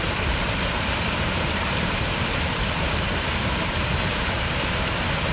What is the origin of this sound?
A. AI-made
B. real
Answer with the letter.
A